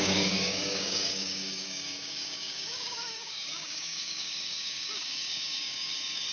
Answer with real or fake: fake